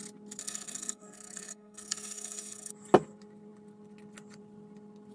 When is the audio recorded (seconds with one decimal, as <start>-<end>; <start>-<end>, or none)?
0.0-0.4; 2.7-5.1